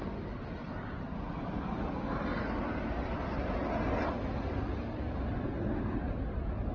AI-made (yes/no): no